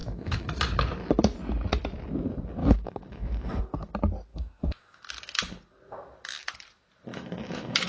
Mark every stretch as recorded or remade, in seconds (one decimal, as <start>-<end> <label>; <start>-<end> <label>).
0.0-0.6 remade; 0.6-2.6 recorded; 2.6-3.6 remade; 3.6-4.3 recorded; 4.3-5.0 remade; 5.0-7.1 recorded; 7.1-7.9 remade